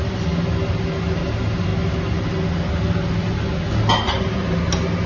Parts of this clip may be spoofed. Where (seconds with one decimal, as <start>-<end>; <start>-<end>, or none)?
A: none